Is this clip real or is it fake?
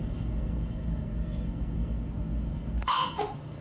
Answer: fake